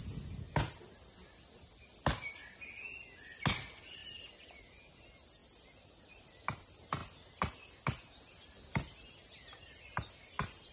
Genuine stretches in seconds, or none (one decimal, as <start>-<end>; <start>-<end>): 0.0-10.7

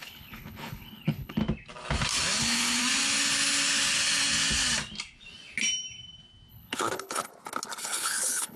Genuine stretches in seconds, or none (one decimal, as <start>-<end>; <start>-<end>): 1.4-2.4; 2.8-6.5; 7.3-7.8

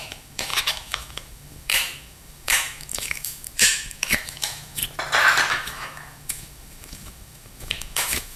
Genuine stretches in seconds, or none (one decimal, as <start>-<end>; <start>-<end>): 4.8-5.5

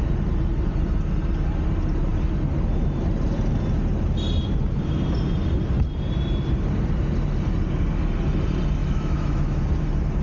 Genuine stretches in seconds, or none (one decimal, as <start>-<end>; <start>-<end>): 0.0-8.8; 9.6-10.2